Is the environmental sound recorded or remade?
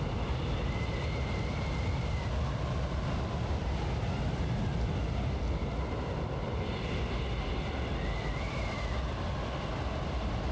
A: recorded